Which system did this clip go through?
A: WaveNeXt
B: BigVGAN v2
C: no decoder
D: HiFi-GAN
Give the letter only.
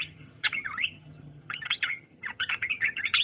D